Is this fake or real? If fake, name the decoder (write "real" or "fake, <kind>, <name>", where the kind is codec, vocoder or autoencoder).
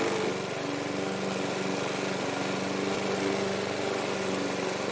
real